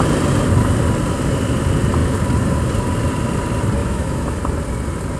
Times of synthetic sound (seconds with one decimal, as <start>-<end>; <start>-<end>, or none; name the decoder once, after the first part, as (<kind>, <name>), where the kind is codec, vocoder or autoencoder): 3.8-4.4 (autoencoder, DAC-VAE)

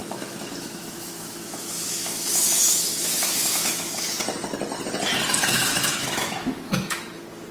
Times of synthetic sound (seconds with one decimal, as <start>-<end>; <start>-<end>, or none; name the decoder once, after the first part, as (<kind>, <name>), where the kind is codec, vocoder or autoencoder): 0.0-4.2 (autoencoder, DAC-VAE); 5.4-7.0

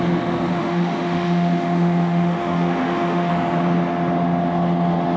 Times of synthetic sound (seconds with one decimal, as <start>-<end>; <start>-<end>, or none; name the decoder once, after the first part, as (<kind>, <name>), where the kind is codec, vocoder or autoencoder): 0.5-3.3 (autoencoder, DAC-VAE)